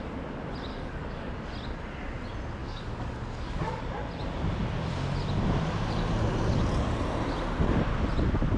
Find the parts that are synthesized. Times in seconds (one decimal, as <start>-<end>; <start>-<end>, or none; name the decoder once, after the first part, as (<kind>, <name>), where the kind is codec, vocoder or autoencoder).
0.7-1.3 (codec, DAC); 2.6-3.8